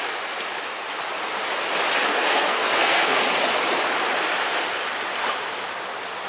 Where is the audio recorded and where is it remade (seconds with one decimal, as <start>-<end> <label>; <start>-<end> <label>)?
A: 0.0-2.1 recorded; 2.1-3.2 remade; 3.2-6.3 recorded